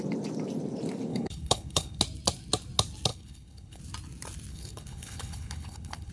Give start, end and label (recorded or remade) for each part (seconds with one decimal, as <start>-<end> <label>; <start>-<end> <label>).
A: 0.0-1.1 recorded; 1.1-2.0 remade; 2.0-3.1 recorded; 3.1-3.8 remade; 3.8-4.5 recorded; 4.5-6.1 remade